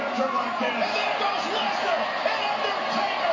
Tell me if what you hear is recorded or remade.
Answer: recorded